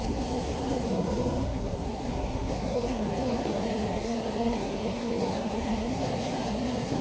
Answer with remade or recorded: remade